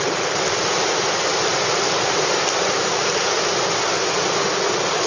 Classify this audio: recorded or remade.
recorded